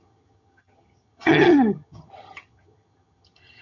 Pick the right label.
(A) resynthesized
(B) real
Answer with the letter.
A